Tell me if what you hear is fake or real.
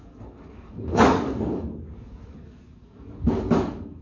fake